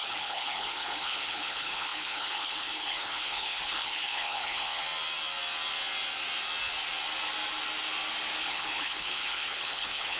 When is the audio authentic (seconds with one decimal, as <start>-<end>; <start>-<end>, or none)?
4.8-8.4